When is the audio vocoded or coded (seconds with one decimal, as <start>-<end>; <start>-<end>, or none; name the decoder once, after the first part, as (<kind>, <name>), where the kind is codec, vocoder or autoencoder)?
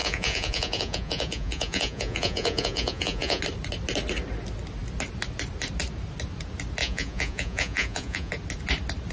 0.0-3.4 (vocoder, Vocos); 6.8-8.3